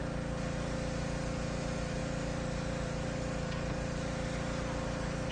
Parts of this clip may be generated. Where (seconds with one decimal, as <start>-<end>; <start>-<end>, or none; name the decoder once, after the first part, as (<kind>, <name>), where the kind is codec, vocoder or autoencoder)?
none